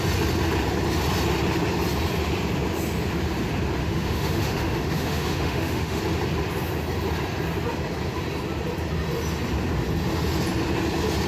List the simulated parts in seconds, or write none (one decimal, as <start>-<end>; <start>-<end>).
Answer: 3.8-6.0